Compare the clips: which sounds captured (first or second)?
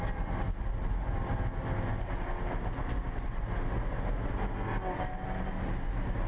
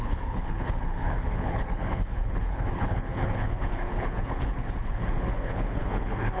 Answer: first